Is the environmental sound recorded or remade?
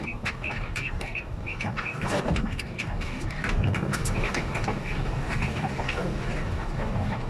remade